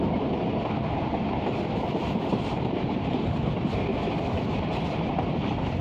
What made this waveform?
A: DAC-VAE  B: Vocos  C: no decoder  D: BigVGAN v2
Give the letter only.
C